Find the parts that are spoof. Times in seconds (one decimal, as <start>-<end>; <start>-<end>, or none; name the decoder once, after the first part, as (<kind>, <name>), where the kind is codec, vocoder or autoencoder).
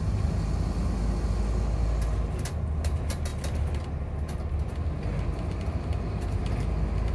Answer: none